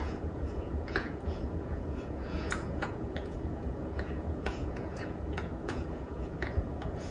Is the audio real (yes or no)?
no